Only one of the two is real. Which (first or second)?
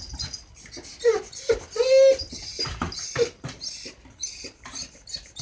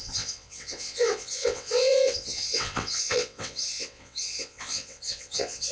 first